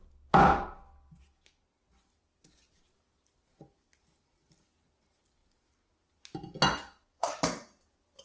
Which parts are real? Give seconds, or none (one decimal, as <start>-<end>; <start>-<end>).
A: 0.0-8.2